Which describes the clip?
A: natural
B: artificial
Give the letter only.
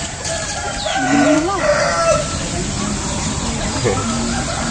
A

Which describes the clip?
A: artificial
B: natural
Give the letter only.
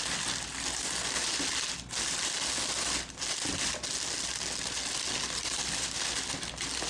B